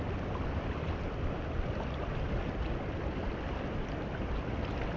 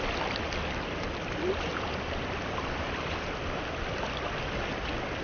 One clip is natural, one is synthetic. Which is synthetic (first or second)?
first